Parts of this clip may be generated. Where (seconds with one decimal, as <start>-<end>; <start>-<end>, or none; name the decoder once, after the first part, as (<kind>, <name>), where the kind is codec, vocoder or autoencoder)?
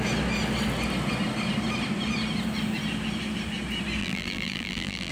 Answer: 4.0-5.1 (vocoder, BigVGAN v2)